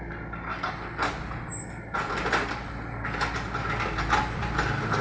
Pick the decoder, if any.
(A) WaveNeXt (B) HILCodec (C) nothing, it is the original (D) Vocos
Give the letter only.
C